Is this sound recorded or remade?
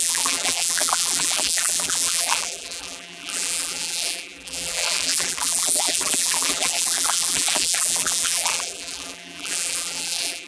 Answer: remade